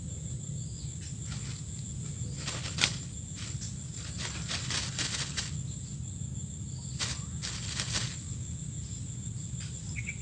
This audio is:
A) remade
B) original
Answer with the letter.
B